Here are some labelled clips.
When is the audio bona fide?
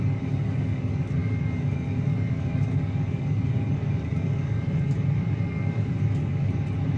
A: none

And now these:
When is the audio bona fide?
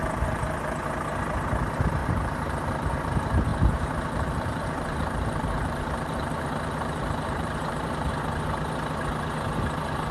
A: 0.0-2.0; 3.1-3.5; 8.1-10.1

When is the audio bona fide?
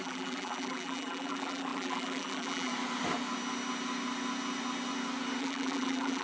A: 2.7-5.4